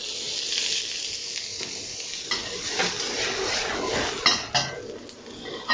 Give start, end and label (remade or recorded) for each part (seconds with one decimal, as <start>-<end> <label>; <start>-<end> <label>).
0.0-1.5 recorded; 1.5-2.8 remade; 2.8-5.7 recorded